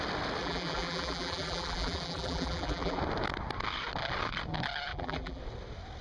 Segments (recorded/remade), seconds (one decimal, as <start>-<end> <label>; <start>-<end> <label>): 0.0-0.4 recorded; 0.4-3.0 remade; 3.0-4.9 recorded; 4.9-5.4 remade; 5.4-6.0 recorded